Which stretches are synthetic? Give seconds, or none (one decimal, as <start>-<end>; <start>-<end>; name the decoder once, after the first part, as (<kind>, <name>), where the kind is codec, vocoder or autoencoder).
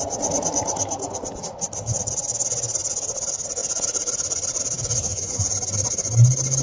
5.0-5.5 (vocoder, Vocos)